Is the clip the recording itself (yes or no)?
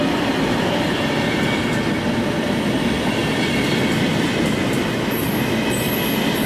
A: yes